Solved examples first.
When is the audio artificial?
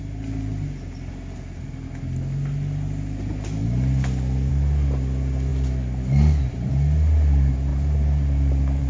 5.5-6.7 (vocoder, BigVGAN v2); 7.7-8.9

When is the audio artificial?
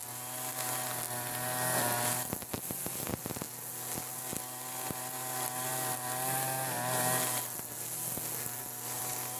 none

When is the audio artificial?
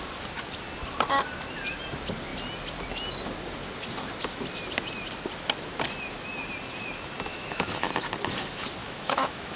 7.3-7.9 (autoencoder, DAC-VAE); 8.8-9.6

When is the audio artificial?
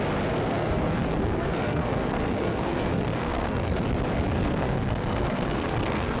0.5-3.8 (codec, SNAC); 4.3-6.2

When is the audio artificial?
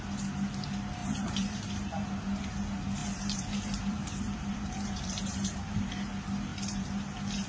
1.0-2.0 (vocoder, BigVGAN v2); 3.0-5.8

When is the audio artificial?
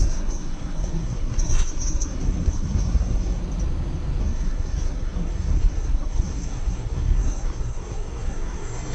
0.0-3.4 (codec, SNAC); 4.2-8.9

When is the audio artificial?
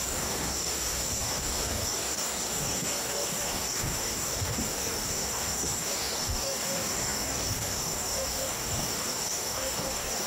0.0-10.3 (codec, DAC)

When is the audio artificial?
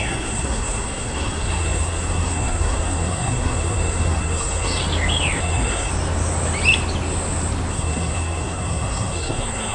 0.0-4.8 (codec, SNAC); 5.4-5.9; 7.7-9.7